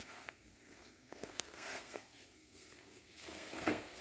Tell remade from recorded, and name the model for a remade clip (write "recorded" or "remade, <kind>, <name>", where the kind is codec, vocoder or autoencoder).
remade, codec, SNAC